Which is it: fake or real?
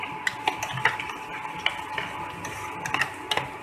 real